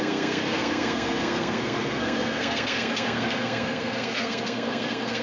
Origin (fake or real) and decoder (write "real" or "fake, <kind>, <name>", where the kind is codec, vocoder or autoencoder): fake, codec, SNAC